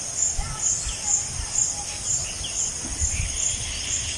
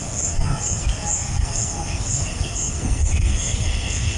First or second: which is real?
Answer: first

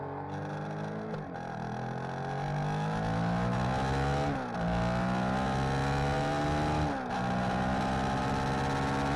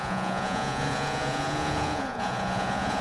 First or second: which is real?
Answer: first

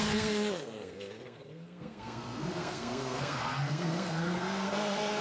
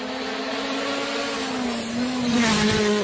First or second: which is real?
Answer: second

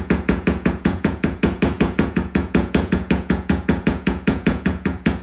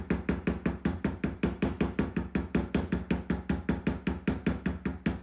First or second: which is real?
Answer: second